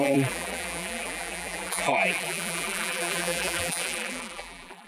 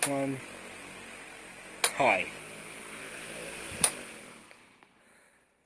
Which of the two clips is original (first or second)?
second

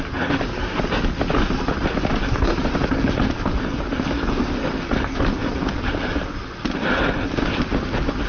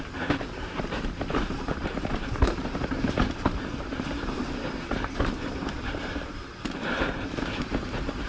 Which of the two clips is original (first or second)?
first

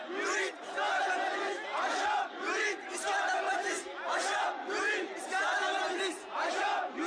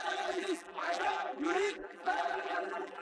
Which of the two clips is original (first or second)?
first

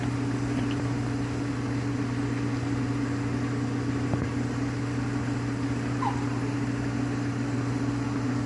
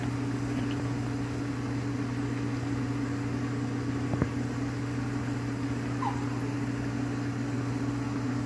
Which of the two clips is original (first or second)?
second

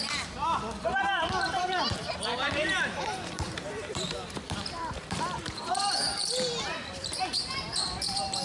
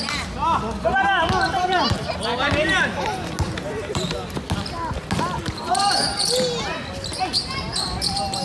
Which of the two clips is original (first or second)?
second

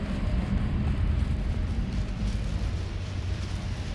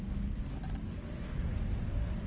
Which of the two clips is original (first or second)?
second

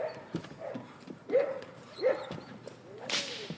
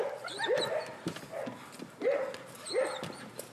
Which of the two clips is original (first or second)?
second